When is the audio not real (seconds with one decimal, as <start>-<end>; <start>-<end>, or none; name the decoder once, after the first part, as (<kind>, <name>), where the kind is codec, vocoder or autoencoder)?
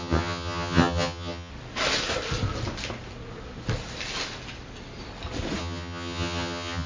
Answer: 0.0-1.5 (vocoder, HiFi-GAN); 5.6-6.9